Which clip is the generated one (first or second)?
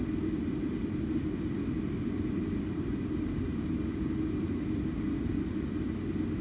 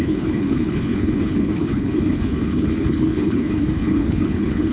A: second